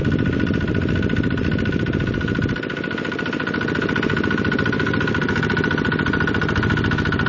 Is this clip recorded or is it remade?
recorded